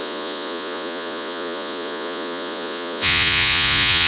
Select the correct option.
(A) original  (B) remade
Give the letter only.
B